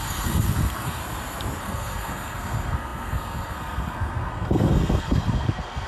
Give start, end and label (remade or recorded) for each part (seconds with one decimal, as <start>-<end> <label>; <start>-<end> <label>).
0.0-1.0 remade; 1.0-1.6 recorded; 1.6-5.9 remade